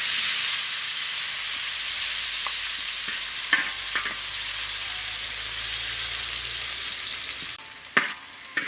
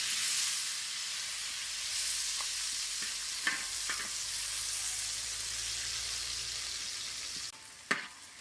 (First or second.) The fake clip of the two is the first